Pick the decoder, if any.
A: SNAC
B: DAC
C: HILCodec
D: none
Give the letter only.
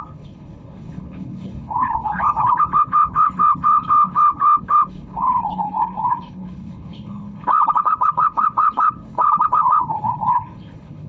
C